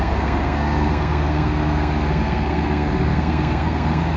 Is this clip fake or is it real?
fake